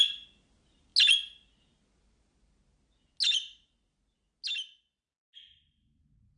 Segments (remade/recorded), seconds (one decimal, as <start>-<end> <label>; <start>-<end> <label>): 0.0-6.4 recorded